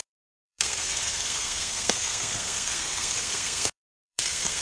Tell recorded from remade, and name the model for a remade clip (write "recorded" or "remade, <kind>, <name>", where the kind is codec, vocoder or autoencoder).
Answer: remade, codec, SNAC